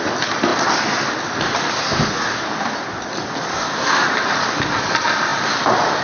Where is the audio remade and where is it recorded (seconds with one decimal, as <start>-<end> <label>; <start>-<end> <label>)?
0.0-0.5 remade; 0.5-4.1 recorded; 4.1-5.3 remade; 5.3-6.0 recorded